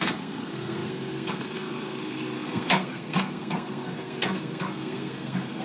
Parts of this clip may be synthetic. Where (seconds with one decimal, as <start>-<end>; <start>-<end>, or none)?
0.0-5.6